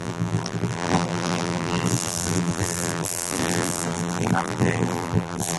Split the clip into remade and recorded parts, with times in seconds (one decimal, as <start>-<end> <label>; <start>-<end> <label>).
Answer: 0.0-5.6 remade